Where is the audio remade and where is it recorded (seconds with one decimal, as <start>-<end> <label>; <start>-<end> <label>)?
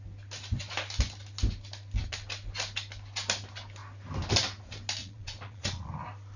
0.0-5.0 recorded; 5.0-5.9 remade; 5.9-6.4 recorded